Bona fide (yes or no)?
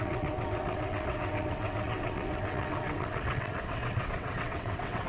no